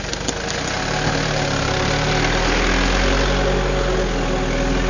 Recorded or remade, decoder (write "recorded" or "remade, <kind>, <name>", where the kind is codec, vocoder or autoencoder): recorded